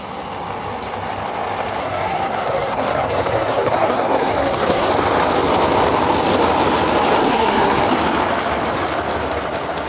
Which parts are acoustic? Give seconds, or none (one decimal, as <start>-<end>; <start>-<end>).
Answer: 0.0-1.8; 4.9-7.2; 7.8-9.9